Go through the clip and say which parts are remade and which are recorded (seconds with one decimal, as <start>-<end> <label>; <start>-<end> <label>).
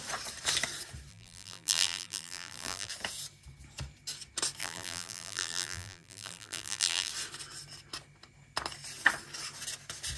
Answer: 0.0-1.1 recorded; 1.1-2.9 remade; 2.9-4.6 recorded; 4.6-7.1 remade; 7.1-10.2 recorded